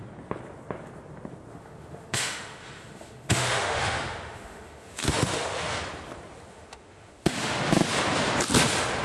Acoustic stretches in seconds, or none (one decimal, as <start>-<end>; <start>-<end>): 0.0-1.5; 5.8-6.5; 7.6-9.0